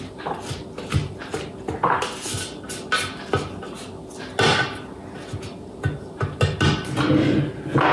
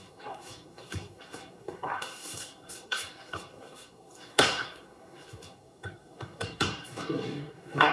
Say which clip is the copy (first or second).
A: second